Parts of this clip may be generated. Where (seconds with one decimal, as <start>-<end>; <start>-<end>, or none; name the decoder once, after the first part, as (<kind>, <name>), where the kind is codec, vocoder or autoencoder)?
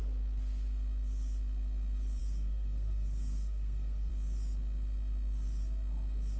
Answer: 2.2-4.1 (codec, SNAC)